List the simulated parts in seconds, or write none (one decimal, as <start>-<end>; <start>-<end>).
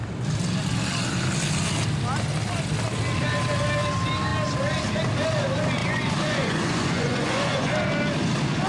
5.8-7.7